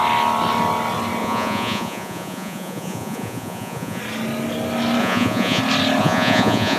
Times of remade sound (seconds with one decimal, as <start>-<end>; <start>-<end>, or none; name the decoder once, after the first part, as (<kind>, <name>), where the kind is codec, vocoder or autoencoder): 1.2-4.0 (vocoder, Vocos); 5.0-5.6; 6.0-6.8